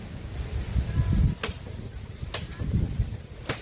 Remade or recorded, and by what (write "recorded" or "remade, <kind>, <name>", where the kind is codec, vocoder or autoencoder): recorded